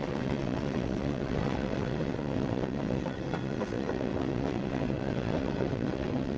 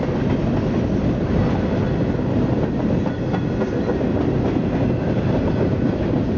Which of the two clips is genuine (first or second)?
second